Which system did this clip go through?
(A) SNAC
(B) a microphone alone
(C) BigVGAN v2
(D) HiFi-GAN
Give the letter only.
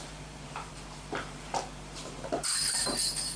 C